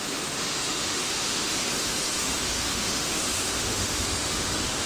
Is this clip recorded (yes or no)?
no